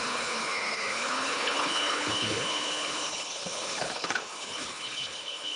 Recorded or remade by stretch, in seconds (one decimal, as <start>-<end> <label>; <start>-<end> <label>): 0.0-5.6 remade